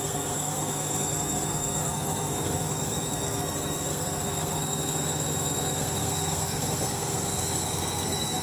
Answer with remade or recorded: remade